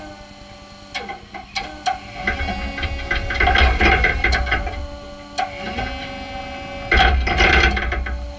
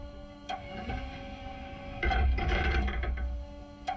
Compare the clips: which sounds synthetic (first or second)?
second